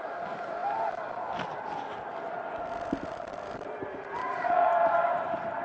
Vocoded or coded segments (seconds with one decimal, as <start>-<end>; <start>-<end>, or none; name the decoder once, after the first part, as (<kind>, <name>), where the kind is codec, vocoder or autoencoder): 4.2-4.7 (vocoder, Vocos)